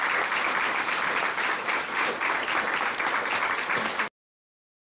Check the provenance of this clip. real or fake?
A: real